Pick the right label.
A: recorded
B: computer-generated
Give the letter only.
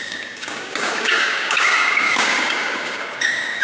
B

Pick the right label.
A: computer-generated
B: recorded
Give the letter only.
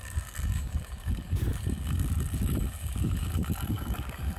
A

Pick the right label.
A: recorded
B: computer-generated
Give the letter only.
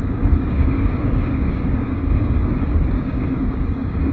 B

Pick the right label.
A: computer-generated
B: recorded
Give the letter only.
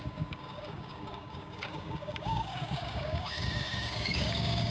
A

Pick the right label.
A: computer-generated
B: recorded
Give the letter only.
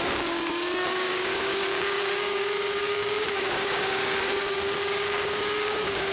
A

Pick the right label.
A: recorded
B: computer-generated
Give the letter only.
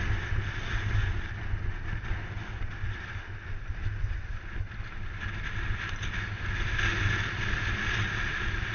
A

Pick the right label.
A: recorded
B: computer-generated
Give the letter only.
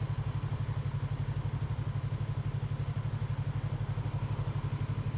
A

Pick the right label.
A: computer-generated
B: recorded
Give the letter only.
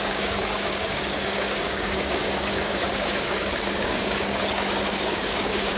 A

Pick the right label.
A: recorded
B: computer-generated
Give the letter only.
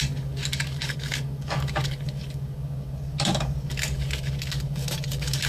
B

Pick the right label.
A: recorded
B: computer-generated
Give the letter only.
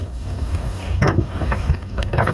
B